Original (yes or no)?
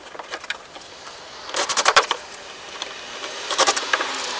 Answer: yes